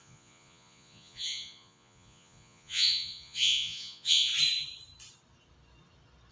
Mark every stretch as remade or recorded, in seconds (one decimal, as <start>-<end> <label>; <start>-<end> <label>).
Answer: 0.0-4.3 remade; 4.3-6.3 recorded